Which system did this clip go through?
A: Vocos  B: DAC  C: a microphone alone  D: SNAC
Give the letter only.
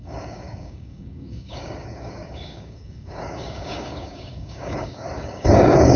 B